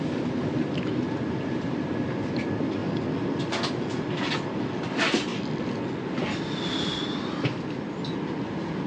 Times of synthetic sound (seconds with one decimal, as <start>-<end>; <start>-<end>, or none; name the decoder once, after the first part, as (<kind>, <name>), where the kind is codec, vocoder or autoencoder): none